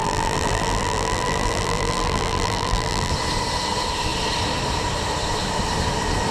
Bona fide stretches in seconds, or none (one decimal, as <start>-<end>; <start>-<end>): 3.1-6.3